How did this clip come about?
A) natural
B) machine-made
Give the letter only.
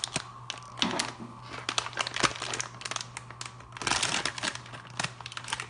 A